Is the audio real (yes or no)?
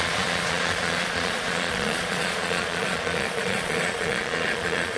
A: no